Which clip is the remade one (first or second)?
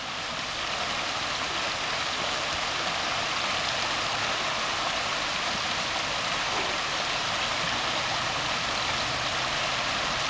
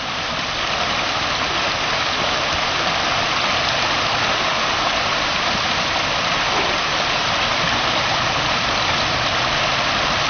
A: second